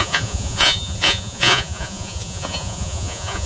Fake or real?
fake